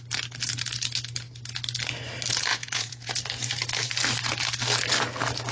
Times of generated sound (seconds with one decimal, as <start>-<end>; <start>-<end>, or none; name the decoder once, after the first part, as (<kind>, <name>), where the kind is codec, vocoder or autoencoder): 2.5-3.1 (vocoder, Vocos)